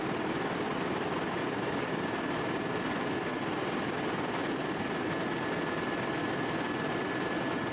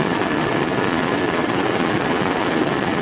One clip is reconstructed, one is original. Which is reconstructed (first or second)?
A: second